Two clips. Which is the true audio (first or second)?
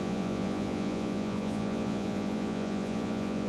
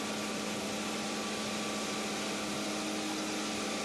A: second